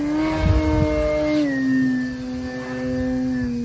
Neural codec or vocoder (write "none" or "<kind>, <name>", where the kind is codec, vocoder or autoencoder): none